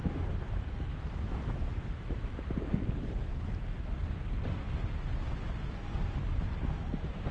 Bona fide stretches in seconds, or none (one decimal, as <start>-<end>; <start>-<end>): 0.0-0.9; 2.3-7.3